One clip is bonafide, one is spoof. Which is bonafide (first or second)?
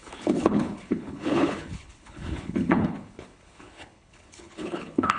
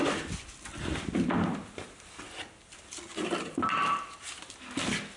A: second